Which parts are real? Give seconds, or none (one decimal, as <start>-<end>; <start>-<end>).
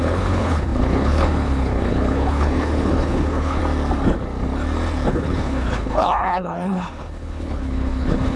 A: 3.6-5.1